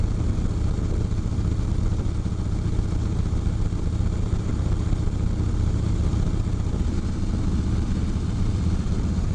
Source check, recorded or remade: recorded